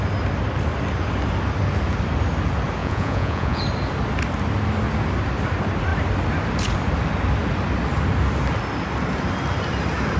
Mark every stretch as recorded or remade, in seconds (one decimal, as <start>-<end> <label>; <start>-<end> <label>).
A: 0.0-2.8 recorded; 2.8-3.6 remade; 3.6-10.2 recorded